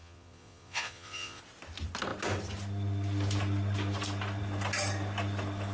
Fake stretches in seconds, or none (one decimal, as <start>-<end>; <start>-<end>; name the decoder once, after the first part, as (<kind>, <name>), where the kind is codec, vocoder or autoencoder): 0.0-1.4 (vocoder, Vocos)